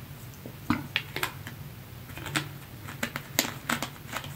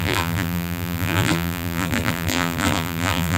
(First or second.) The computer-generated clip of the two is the second